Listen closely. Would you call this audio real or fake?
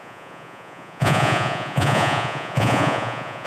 fake